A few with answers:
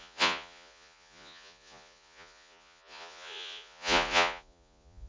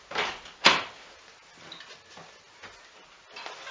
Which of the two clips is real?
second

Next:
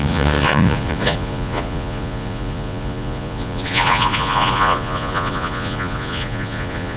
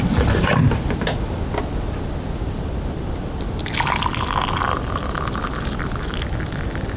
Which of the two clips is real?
second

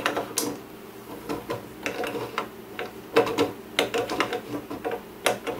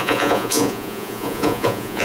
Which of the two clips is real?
first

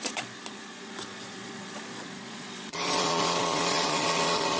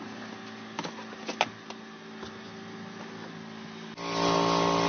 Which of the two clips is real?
second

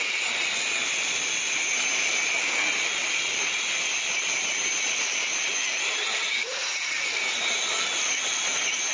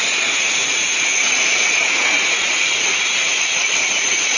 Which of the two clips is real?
first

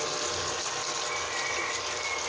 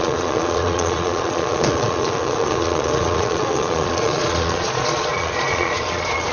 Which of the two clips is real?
first